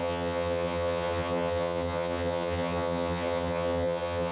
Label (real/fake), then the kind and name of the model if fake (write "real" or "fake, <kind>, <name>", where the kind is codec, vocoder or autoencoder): fake, vocoder, HiFi-GAN